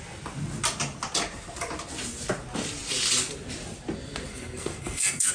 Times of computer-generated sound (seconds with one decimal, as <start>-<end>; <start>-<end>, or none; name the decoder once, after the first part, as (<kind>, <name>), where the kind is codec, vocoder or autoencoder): 4.3-5.3 (codec, SNAC)